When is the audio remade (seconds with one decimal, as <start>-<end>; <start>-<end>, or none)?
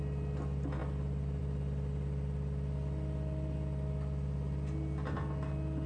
none